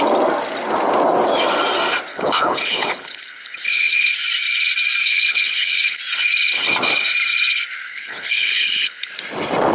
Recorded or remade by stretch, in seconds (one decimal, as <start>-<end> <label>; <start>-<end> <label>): 0.0-2.1 recorded; 2.1-4.1 remade; 4.1-5.0 recorded; 5.0-6.0 remade; 6.0-7.9 recorded; 7.9-9.1 remade; 9.1-9.7 recorded